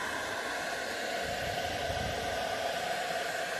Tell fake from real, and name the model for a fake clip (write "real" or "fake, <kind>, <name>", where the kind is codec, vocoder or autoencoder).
real